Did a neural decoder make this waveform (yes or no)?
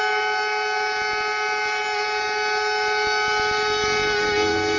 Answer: no